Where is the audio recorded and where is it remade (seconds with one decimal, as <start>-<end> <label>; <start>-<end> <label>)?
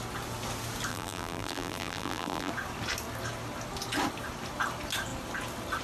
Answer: 0.0-0.9 recorded; 0.9-2.5 remade; 2.5-5.8 recorded